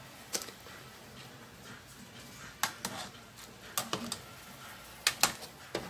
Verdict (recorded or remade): recorded